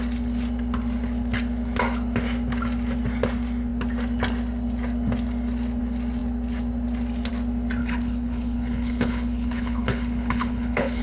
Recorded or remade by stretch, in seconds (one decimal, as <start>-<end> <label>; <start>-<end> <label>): 0.0-7.8 recorded; 7.8-11.0 remade